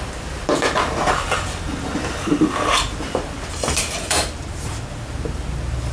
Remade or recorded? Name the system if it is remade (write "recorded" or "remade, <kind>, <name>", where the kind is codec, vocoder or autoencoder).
remade, vocoder, BigVGAN v2